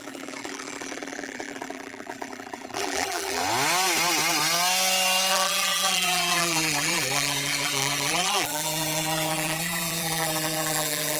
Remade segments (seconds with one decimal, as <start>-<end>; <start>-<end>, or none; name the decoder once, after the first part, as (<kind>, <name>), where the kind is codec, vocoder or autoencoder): 0.0-3.4 (vocoder, BigVGAN v2); 5.3-11.2